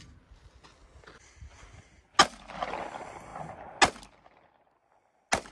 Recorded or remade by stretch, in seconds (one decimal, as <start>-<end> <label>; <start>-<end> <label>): 0.0-5.5 recorded